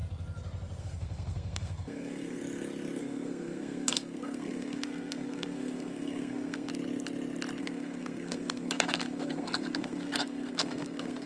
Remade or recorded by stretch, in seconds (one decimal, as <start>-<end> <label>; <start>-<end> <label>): 0.0-0.8 recorded; 0.8-2.4 remade; 2.4-3.0 recorded; 3.0-6.7 remade; 6.7-7.6 recorded; 7.6-11.3 remade

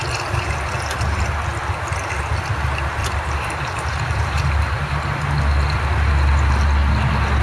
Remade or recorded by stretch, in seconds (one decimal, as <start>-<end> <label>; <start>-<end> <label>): 0.0-3.0 recorded; 3.0-5.3 remade; 5.3-7.4 recorded

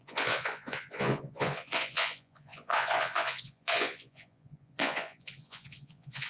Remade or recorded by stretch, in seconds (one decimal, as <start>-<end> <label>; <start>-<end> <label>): 0.0-6.3 remade

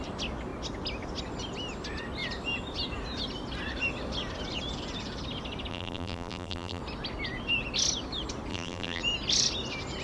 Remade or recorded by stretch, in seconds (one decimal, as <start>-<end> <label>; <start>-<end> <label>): 0.0-5.7 recorded; 5.7-6.8 remade; 6.8-8.5 recorded; 8.5-9.0 remade; 9.0-10.0 recorded

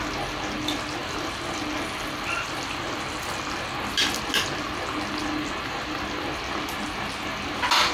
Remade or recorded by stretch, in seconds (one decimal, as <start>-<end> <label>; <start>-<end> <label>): 0.0-1.0 recorded; 1.0-2.8 remade; 2.8-7.9 recorded